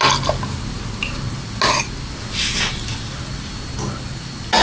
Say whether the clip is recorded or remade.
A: recorded